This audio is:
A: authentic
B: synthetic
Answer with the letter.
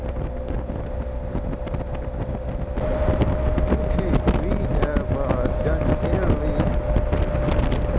A